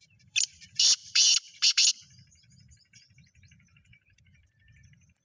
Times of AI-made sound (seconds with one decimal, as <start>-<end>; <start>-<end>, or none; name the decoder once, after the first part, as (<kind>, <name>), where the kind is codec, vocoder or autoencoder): 0.0-5.2 (vocoder, BigVGAN v2)